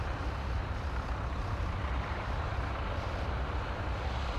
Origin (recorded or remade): recorded